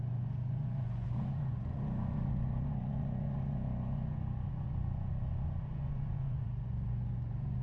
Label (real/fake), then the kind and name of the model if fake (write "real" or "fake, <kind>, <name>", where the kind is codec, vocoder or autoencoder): fake, vocoder, Vocos